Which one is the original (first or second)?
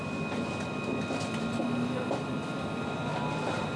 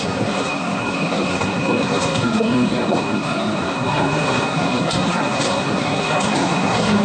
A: first